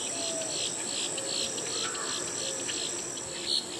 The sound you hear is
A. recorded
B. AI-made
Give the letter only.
A